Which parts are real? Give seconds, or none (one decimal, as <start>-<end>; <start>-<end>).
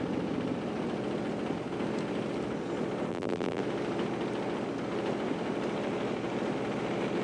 0.0-3.1; 3.6-7.2